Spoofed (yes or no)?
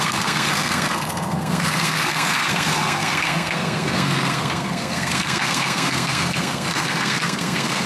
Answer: yes